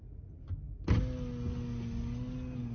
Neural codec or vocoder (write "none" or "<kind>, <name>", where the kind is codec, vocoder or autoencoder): none